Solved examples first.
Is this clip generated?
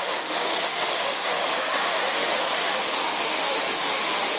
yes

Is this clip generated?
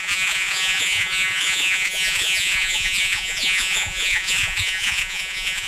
yes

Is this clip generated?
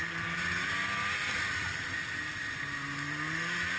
no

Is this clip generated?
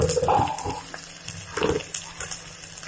no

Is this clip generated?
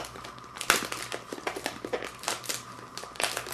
no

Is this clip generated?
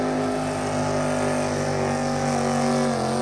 no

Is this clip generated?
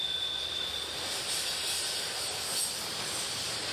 yes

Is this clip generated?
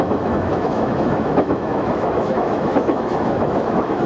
yes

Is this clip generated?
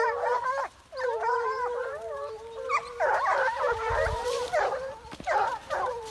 yes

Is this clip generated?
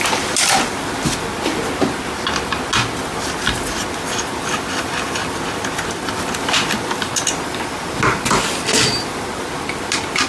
no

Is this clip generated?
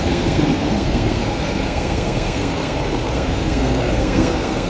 yes